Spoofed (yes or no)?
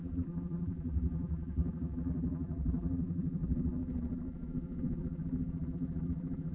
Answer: yes